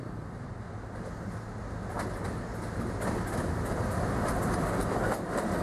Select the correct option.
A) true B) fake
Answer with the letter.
A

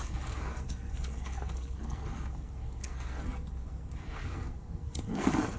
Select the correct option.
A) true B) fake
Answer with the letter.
B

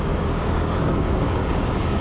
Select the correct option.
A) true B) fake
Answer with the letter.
B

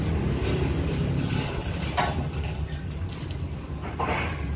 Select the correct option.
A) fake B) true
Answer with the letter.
B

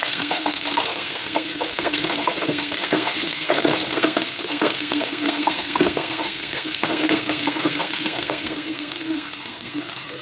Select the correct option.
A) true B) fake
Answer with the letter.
B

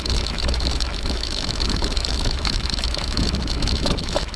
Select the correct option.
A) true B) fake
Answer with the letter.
B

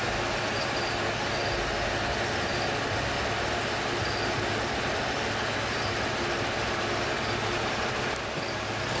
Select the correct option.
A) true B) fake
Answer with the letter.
A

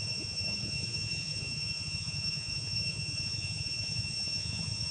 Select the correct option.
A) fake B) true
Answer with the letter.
A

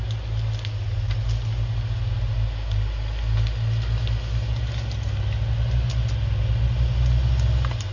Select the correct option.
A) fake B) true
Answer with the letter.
B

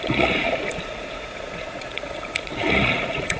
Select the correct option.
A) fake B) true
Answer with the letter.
A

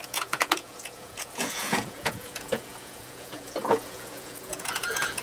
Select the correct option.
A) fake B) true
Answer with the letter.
A